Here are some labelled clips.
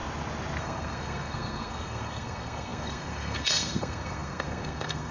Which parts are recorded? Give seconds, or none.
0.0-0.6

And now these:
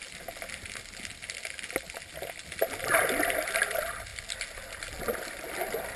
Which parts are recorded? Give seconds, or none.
0.0-6.0

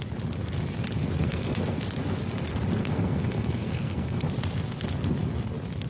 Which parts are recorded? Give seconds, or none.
0.0-1.2; 1.8-2.8; 4.3-5.9

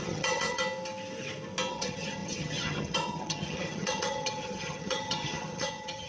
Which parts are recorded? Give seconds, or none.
0.6-1.7